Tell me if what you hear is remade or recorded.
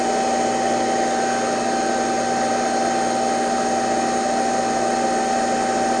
recorded